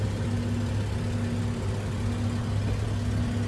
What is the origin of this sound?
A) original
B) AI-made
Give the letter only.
A